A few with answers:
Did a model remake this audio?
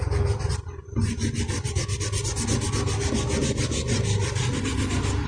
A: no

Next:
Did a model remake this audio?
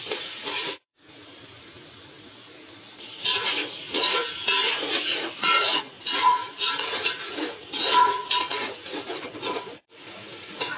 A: yes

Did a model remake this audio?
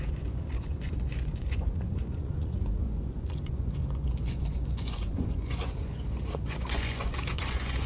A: yes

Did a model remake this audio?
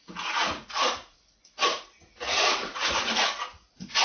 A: yes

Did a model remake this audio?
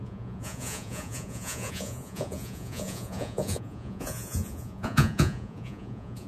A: yes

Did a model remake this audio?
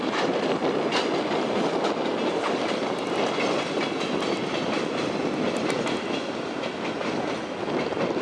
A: no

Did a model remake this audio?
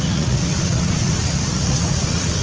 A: yes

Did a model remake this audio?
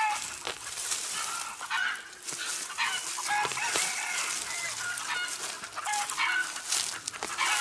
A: no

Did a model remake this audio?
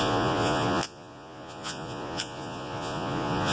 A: yes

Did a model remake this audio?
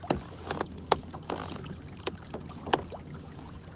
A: no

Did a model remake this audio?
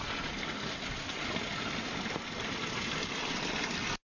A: no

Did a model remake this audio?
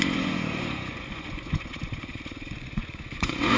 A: yes